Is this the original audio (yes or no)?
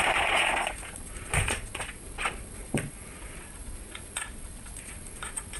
no